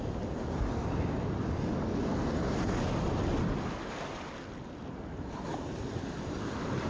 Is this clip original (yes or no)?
yes